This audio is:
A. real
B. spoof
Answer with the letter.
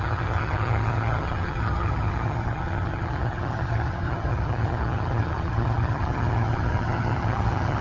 B